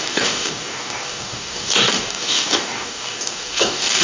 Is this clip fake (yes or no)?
yes